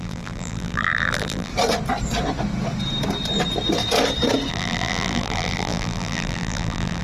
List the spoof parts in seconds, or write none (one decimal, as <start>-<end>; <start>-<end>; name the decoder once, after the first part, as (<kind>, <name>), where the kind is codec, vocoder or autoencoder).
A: 0.0-1.5 (vocoder, BigVGAN v2); 4.5-7.0